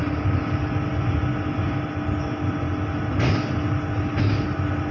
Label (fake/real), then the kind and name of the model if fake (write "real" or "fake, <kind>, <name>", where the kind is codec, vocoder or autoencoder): real